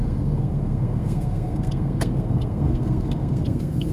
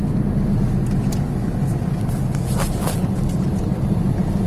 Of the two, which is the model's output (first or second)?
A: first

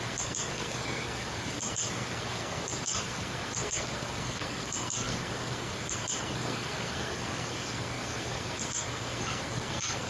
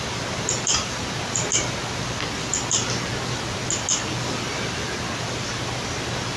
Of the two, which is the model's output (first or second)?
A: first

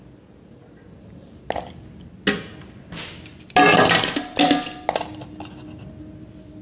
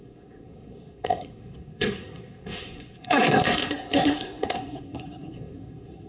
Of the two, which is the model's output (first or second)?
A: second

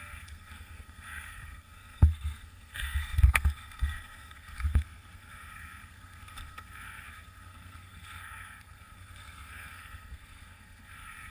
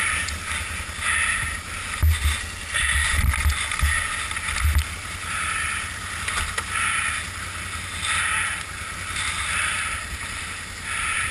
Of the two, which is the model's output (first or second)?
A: first